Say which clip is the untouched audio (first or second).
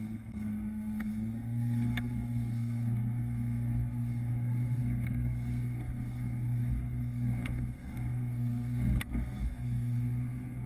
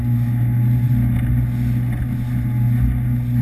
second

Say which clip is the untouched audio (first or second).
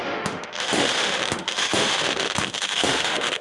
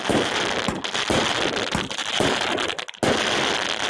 second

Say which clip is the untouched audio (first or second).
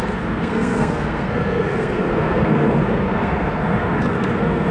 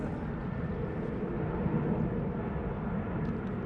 second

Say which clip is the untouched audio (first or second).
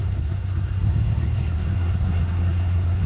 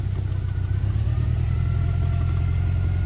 second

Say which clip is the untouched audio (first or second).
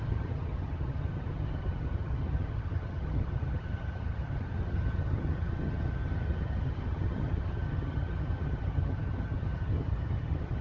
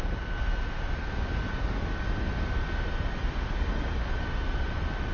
second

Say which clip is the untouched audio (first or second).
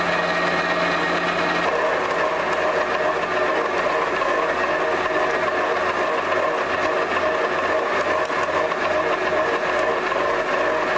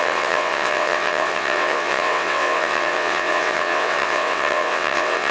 first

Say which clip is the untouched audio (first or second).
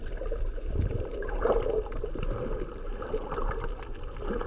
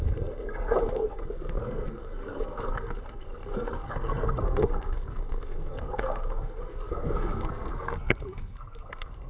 first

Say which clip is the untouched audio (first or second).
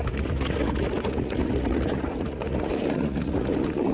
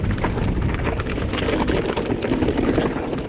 second